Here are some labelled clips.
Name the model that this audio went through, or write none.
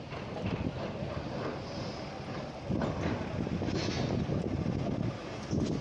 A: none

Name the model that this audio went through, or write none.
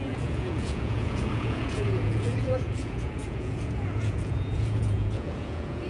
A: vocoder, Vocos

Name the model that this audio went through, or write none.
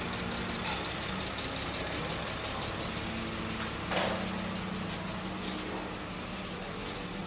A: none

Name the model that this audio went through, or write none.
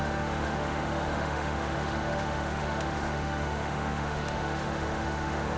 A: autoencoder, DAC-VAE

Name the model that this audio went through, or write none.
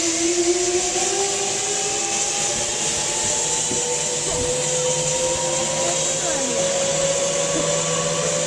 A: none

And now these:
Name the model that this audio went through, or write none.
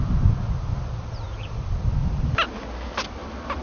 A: none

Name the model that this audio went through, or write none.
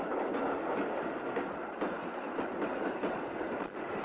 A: none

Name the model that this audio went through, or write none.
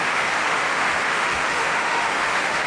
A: autoencoder, DAC-VAE